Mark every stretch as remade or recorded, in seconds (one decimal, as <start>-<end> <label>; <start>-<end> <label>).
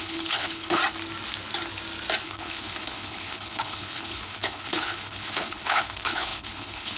0.0-0.8 remade; 0.8-2.2 recorded; 2.2-7.0 remade